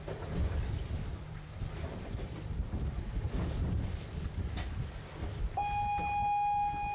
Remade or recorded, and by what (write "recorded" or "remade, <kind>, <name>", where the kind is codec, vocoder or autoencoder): recorded